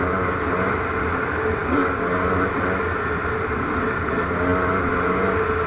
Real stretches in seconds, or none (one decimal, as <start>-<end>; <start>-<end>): 0.0-5.7